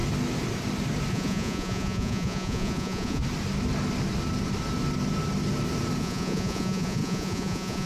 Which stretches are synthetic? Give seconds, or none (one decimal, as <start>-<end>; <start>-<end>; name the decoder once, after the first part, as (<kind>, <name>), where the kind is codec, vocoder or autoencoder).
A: 1.1-3.2 (vocoder, Vocos); 6.0-7.9